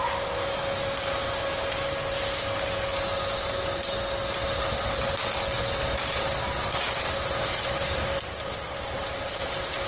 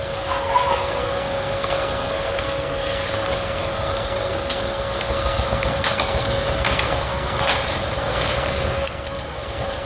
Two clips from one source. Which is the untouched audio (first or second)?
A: first